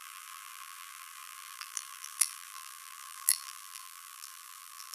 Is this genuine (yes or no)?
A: no